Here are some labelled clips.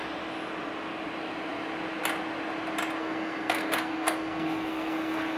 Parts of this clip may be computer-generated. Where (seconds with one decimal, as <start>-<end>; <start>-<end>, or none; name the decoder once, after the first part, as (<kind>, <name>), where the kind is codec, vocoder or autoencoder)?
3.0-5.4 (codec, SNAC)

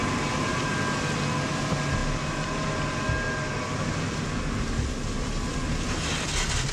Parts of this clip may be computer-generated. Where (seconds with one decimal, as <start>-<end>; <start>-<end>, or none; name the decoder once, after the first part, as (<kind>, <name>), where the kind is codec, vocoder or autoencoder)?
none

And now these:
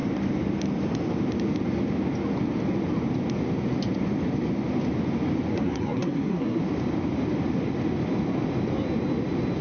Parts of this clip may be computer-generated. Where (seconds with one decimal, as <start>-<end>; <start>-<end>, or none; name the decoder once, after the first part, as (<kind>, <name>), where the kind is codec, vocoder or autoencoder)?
5.5-6.6 (codec, SNAC)